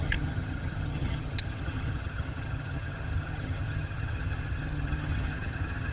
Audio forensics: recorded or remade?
remade